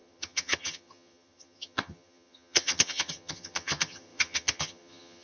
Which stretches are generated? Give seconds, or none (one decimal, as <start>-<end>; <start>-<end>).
0.0-5.2